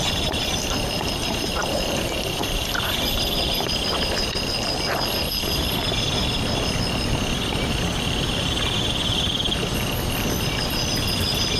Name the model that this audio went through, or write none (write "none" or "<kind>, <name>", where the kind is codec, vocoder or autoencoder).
vocoder, BigVGAN v2